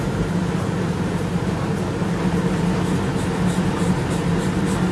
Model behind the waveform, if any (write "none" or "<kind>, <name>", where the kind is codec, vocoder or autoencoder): vocoder, BigVGAN v2